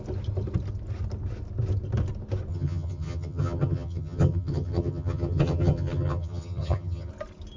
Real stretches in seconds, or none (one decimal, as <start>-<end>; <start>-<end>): 0.0-2.5; 7.1-7.6